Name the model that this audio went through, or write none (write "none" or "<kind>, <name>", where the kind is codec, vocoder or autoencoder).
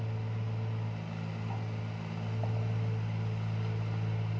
none